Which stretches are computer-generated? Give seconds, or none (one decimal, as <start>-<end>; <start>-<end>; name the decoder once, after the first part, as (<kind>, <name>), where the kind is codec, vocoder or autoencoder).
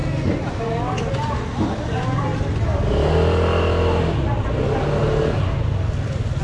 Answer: none